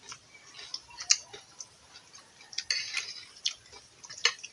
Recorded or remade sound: recorded